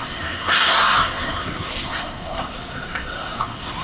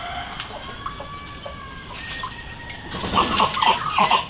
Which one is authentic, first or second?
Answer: second